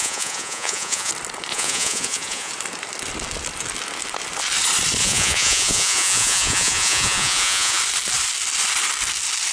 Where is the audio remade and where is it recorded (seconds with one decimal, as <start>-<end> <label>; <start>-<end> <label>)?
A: 0.0-1.1 remade; 1.1-1.5 recorded; 1.5-2.5 remade; 2.5-5.0 recorded; 5.0-7.8 remade; 7.8-9.5 recorded